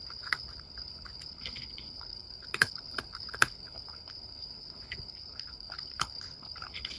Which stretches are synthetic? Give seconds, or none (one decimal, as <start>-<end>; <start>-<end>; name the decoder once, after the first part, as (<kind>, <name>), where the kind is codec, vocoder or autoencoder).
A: 0.0-7.0 (codec, HILCodec)